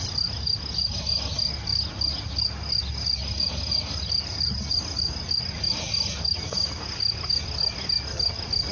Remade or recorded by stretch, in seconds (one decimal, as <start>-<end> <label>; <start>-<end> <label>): 0.0-8.7 recorded